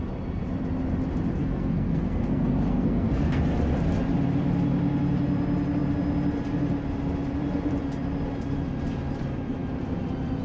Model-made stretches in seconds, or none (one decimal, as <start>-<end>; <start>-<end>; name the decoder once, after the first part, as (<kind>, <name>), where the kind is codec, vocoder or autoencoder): 1.4-3.4 (codec, SNAC)